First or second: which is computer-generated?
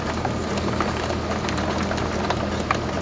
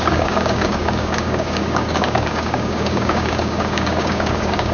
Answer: second